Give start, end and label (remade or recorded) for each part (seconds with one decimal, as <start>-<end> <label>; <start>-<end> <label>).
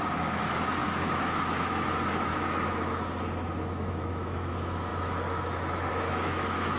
0.0-6.8 remade